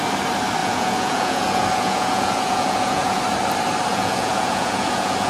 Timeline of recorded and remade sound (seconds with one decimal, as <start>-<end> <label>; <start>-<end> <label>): 0.0-0.6 recorded; 0.6-3.2 remade; 3.2-3.9 recorded; 3.9-5.3 remade